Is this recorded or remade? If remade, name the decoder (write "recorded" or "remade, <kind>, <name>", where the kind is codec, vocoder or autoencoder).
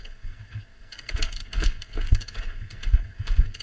remade, codec, SNAC